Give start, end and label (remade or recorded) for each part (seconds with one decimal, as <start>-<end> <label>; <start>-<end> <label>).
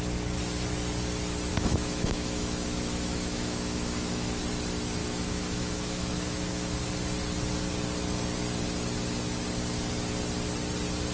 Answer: 0.0-1.5 recorded; 1.5-4.4 remade; 4.4-5.0 recorded; 5.0-6.8 remade; 6.8-11.1 recorded